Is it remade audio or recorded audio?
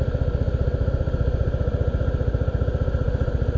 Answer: recorded